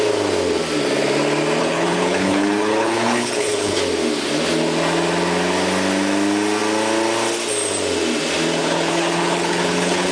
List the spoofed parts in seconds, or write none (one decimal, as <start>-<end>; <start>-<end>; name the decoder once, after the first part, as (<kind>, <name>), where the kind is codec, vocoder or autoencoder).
1.6-3.8 (codec, HILCodec); 8.6-10.1